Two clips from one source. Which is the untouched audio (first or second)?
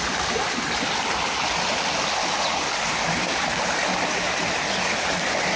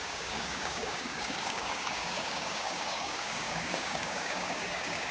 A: first